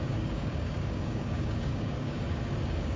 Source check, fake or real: fake